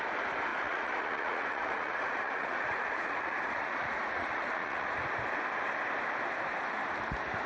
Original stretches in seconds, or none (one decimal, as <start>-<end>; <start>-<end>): 0.0-0.5; 5.0-7.5